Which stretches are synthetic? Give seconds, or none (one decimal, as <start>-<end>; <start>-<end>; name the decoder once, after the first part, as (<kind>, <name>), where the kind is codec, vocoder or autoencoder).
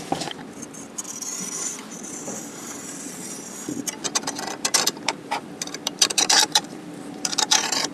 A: 0.0-7.9 (vocoder, BigVGAN v2)